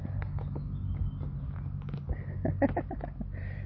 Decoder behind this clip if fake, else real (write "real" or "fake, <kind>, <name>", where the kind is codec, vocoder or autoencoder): real